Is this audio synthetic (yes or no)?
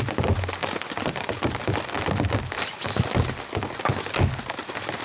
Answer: no